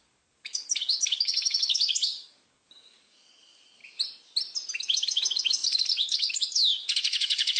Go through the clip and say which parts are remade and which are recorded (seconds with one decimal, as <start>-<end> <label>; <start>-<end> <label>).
0.0-3.8 remade; 3.8-4.7 recorded; 4.7-7.6 remade